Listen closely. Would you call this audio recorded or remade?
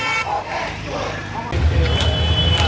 recorded